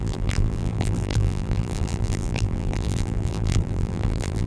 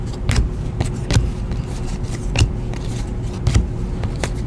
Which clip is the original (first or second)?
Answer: second